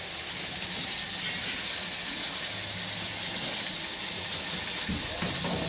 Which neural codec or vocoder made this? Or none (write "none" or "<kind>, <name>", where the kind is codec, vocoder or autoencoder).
none